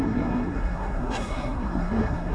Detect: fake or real fake